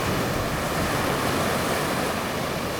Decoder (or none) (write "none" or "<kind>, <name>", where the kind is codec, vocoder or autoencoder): none